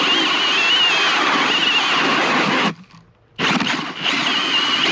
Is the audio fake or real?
real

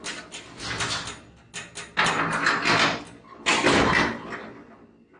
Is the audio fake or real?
real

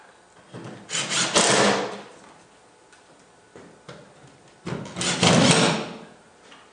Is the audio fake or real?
real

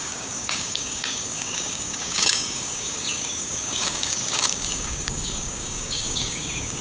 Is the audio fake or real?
fake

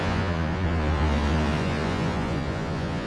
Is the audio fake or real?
fake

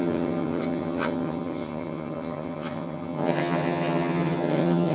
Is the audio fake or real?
fake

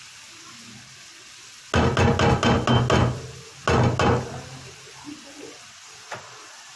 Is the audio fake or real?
real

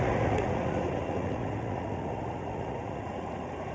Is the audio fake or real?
fake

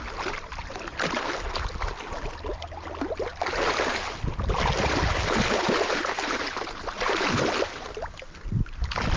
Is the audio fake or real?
real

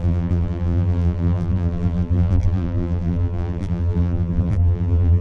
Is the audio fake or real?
fake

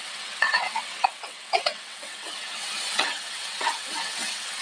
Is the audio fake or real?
fake